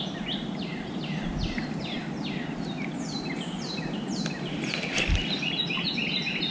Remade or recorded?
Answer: recorded